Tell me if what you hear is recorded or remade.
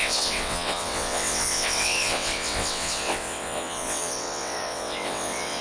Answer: remade